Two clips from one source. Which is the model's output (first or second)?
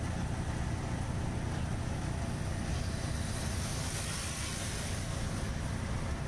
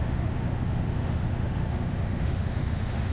second